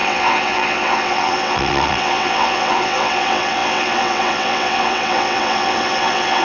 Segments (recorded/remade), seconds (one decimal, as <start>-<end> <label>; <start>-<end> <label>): 0.0-6.4 remade